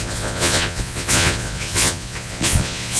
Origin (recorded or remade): remade